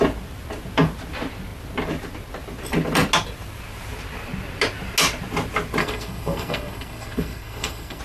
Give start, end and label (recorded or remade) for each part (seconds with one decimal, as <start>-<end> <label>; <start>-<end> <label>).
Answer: 0.0-5.8 recorded; 5.8-8.0 remade